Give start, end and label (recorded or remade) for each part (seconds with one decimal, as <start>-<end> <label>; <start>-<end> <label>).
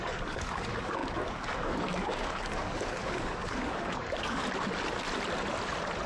0.0-4.4 remade; 4.4-6.1 recorded